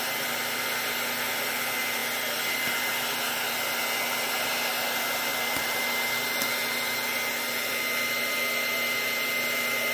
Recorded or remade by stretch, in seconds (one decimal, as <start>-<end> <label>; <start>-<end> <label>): 0.0-9.9 recorded